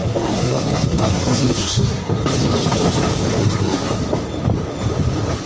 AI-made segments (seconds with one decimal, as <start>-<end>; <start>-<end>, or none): 0.0-2.2; 3.4-4.0